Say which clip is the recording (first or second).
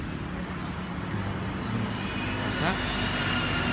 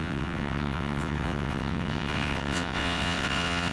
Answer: first